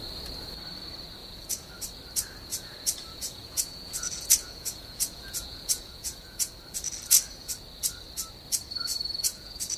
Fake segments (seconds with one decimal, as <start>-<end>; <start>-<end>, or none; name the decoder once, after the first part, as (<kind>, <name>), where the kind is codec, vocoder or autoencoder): 1.2-1.7 (vocoder, Vocos); 2.5-6.5; 8.9-9.8